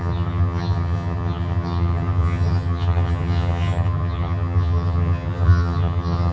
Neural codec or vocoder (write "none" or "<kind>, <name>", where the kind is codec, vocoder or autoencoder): vocoder, HiFi-GAN